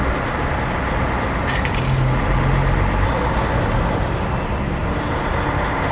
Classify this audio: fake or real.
real